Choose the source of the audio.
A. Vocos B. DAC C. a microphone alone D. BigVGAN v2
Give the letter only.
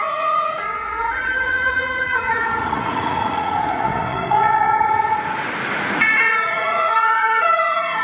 A